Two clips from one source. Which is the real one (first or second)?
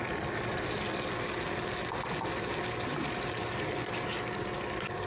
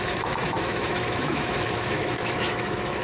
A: first